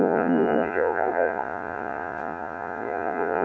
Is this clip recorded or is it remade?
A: remade